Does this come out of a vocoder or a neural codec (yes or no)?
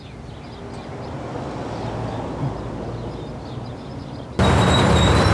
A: no